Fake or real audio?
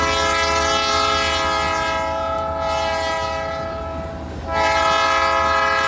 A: real